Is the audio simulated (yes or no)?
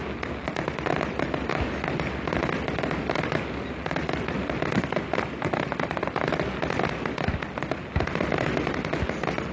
no